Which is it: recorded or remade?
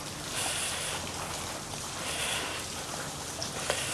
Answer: recorded